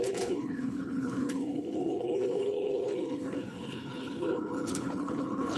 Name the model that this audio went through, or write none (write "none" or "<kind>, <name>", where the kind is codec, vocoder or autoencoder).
codec, HILCodec